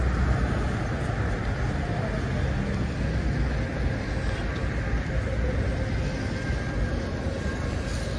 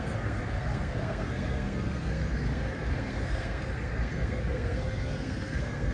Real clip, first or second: first